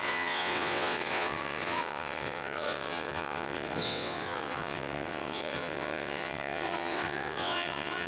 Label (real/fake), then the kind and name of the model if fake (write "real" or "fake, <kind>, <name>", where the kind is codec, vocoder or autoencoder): fake, vocoder, WaveNeXt